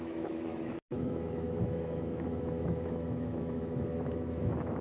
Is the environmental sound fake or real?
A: fake